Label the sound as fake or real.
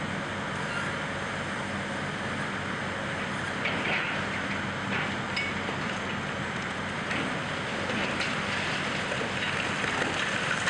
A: real